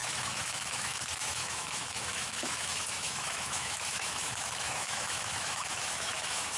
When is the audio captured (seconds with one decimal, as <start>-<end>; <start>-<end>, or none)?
none